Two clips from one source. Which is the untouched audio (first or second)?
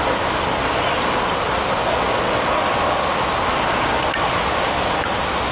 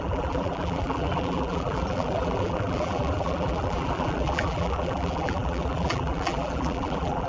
first